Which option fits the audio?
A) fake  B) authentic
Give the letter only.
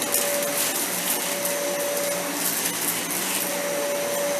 B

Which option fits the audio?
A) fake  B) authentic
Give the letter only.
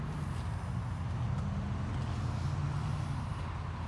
B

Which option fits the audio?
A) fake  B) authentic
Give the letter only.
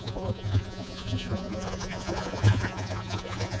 A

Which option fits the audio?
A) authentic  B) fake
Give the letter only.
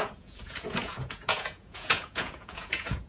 B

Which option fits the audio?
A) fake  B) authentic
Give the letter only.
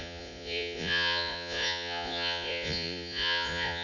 A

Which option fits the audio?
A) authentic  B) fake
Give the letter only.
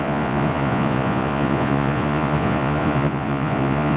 B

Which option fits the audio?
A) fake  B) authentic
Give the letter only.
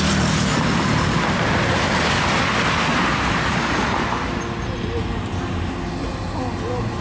B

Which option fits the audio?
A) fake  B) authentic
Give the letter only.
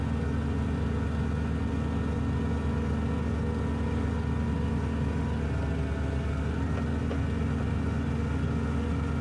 B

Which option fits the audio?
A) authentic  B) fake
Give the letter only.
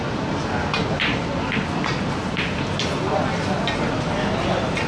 A